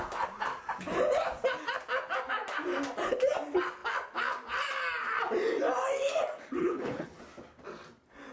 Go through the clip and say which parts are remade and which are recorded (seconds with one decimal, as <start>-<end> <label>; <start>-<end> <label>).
0.0-6.6 recorded; 6.6-7.2 remade; 7.2-8.3 recorded